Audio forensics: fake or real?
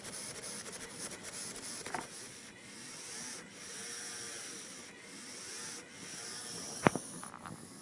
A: real